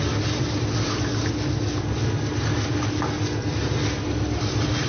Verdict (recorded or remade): recorded